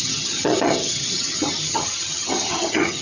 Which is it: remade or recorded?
remade